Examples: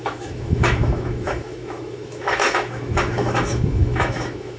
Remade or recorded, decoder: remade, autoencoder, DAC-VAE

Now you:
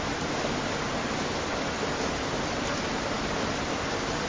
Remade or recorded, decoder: recorded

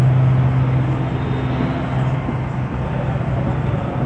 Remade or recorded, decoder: recorded